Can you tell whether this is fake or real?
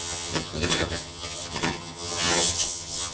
fake